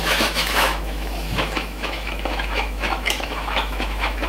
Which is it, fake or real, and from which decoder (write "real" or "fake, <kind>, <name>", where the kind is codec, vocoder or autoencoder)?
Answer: fake, autoencoder, DAC-VAE